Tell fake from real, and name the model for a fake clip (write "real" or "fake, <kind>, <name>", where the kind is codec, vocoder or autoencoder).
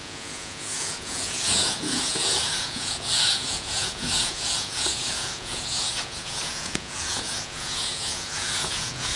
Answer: fake, vocoder, Vocos